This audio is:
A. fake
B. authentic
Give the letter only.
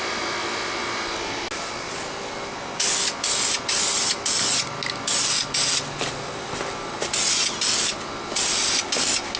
B